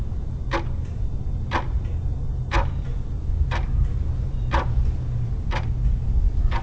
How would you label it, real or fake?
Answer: real